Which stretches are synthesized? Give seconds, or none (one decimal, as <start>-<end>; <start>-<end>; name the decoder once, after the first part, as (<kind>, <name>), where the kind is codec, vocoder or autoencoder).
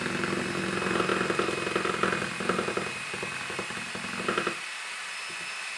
none